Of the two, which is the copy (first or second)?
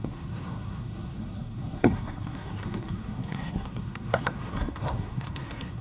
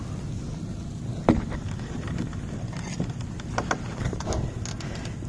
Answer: first